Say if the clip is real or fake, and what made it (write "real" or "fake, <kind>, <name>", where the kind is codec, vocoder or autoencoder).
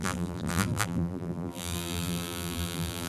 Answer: fake, vocoder, BigVGAN v2